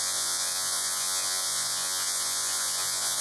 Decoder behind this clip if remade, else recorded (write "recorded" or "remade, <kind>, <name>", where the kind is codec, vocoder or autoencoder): remade, vocoder, Vocos